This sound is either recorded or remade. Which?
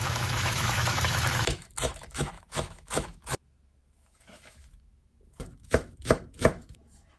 remade